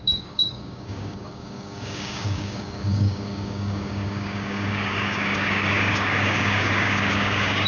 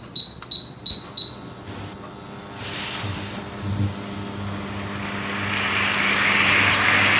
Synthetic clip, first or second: first